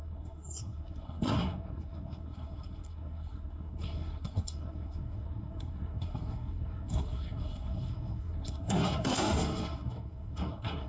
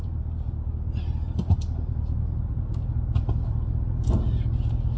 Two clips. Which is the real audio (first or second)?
second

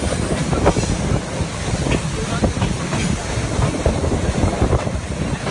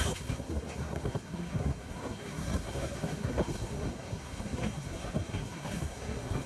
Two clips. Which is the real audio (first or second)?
first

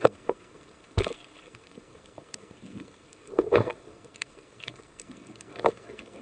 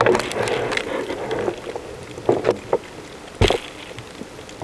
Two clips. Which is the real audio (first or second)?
second